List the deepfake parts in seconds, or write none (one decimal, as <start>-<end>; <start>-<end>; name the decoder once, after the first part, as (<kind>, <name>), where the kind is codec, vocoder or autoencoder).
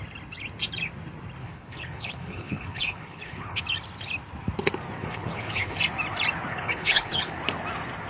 1.4-3.6 (codec, HILCodec); 5.0-5.8; 6.5-7.3